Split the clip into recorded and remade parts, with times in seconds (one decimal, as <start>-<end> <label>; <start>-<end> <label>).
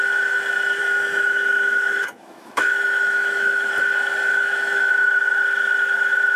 0.0-0.8 recorded; 0.8-3.7 remade; 3.7-4.3 recorded; 4.3-4.9 remade; 4.9-6.4 recorded